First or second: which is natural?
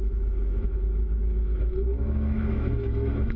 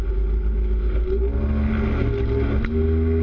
second